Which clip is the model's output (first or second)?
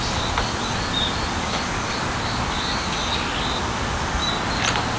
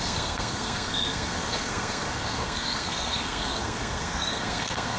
second